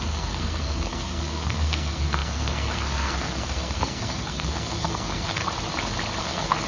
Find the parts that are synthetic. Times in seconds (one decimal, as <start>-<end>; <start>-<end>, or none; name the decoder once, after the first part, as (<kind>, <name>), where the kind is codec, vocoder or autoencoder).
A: 0.0-5.4 (codec, SNAC); 6.2-6.7